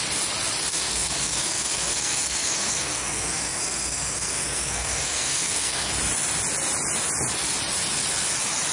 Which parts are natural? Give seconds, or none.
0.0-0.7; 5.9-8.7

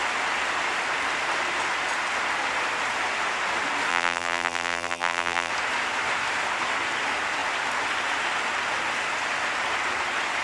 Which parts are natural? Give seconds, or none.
0.0-3.9; 5.5-10.4

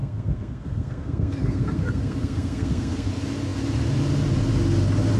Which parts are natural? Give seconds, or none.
3.1-5.2

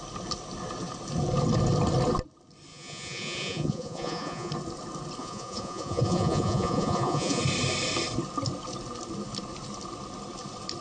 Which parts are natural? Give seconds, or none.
0.0-2.7; 4.5-5.2; 7.4-10.8

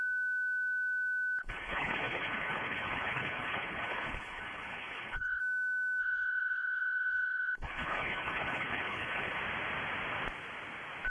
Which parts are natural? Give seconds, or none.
0.0-1.4; 5.4-6.0; 9.4-11.1

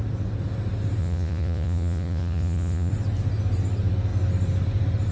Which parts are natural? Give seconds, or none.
0.0-1.0; 2.9-5.1

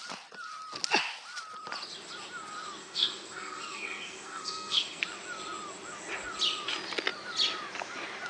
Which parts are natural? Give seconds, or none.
0.0-2.8; 5.0-8.3